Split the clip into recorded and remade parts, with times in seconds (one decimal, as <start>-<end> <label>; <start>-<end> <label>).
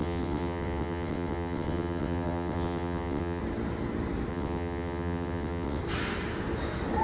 0.0-3.4 remade; 3.4-4.3 recorded; 4.3-5.8 remade; 5.8-7.0 recorded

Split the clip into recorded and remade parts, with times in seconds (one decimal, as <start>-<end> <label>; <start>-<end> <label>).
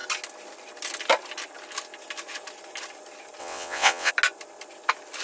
0.0-3.4 recorded; 3.4-4.1 remade; 4.1-5.2 recorded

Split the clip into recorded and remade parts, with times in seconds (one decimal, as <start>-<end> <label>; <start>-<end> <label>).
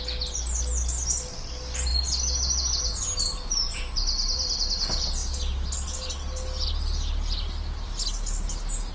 0.0-8.9 recorded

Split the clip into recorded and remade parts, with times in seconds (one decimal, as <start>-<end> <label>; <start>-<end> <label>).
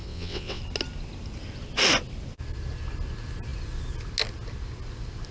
0.0-0.6 remade; 0.6-5.3 recorded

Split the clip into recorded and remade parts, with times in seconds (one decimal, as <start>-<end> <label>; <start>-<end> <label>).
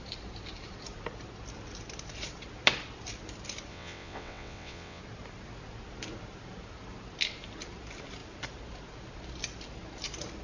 0.0-3.7 recorded; 3.7-5.0 remade; 5.0-10.4 recorded